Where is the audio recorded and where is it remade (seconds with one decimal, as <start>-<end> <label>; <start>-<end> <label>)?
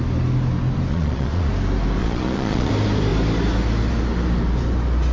0.0-0.9 recorded; 0.9-1.5 remade; 1.5-2.0 recorded; 2.0-2.7 remade; 2.7-5.1 recorded